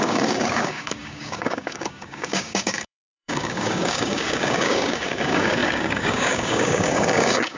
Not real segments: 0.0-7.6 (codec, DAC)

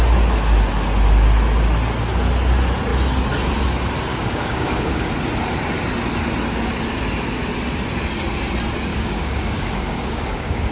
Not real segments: 4.1-5.1 (codec, DAC); 8.9-10.7

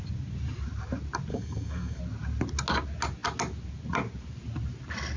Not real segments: 1.3-2.0 (codec, DAC)

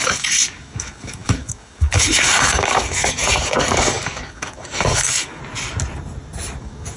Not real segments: 0.0-5.4 (codec, DAC); 6.6-7.0

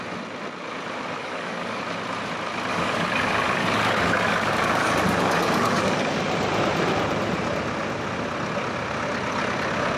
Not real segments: 1.2-1.8 (codec, DAC); 2.7-6.2

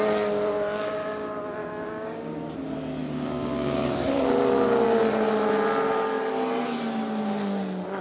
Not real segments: 1.6-2.5 (codec, DAC); 3.0-4.3

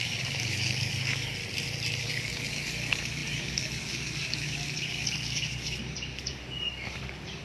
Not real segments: 0.0-1.4 (codec, DAC); 2.0-7.4

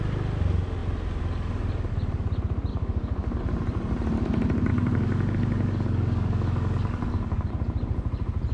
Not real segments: 2.7-3.4 (codec, DAC); 4.7-7.5